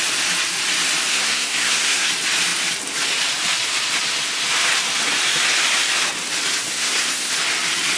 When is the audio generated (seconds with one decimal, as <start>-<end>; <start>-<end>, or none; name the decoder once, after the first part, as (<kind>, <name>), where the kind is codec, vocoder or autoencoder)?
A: 1.1-2.1 (codec, SNAC); 6.7-7.3